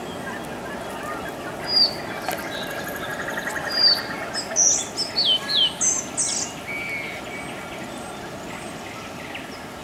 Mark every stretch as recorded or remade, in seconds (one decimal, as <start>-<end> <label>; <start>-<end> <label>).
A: 0.0-9.8 recorded